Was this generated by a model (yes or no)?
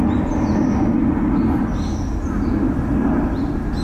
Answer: no